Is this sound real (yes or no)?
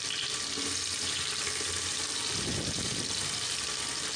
yes